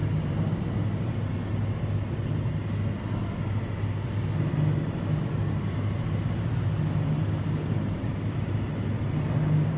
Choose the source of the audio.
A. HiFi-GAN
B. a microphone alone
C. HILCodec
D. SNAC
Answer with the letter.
B